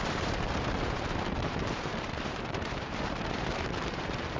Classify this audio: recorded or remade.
remade